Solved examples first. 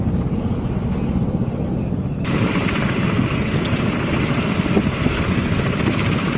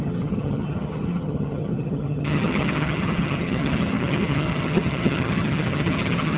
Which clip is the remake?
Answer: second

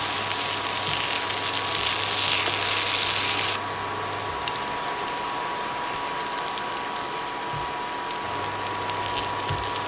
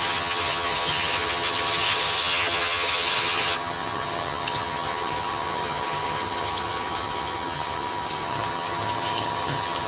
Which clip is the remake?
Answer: second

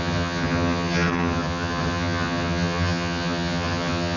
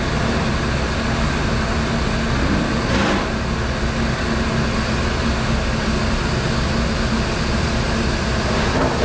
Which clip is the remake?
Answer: first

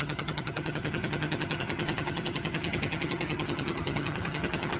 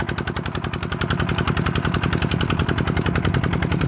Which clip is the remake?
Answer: first